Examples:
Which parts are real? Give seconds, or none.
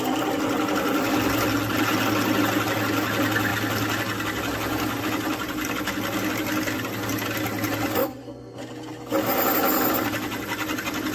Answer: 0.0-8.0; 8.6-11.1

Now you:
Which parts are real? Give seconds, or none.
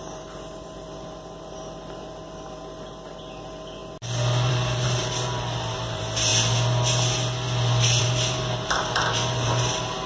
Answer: 3.8-4.5; 6.3-8.0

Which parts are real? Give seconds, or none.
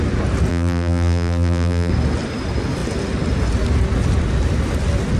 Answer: 0.0-0.5; 1.9-5.2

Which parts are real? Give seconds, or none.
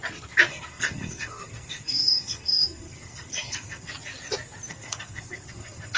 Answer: 0.0-0.5; 3.9-4.7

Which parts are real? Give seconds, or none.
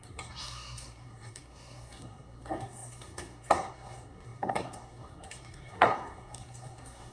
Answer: none